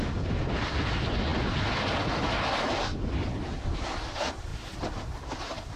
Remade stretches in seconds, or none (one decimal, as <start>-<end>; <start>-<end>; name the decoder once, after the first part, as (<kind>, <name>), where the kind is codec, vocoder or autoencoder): none